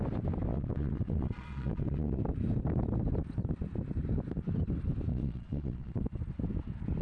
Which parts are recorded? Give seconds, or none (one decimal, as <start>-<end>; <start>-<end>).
0.0-0.5; 2.2-5.1; 6.0-7.0